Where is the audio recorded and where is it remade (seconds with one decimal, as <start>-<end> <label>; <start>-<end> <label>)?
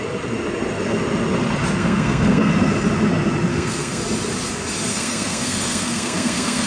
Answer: 0.0-1.8 recorded; 1.8-2.5 remade; 2.5-3.5 recorded; 3.5-4.0 remade; 4.0-4.9 recorded; 4.9-6.7 remade